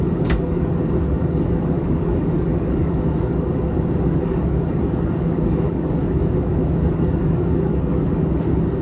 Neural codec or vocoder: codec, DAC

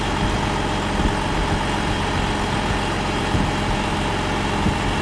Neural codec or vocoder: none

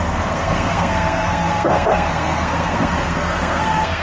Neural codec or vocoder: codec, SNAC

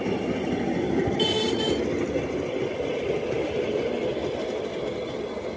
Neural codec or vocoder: none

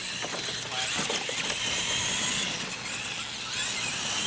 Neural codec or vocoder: none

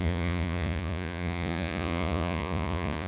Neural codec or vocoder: vocoder, Vocos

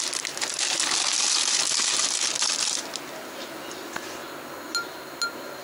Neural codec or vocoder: none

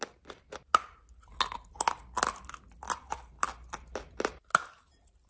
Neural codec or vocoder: none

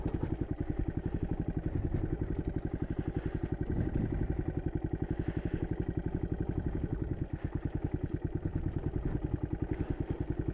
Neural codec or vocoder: none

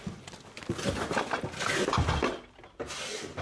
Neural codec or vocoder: none